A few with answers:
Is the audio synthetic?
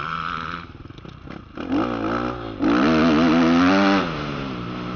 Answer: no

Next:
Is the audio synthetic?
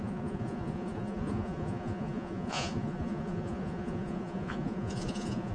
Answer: yes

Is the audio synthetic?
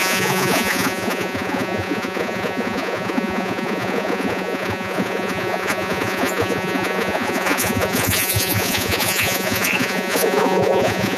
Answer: yes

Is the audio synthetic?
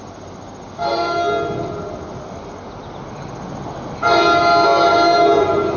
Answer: no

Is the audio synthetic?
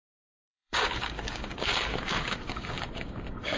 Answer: yes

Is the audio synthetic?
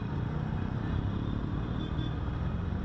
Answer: yes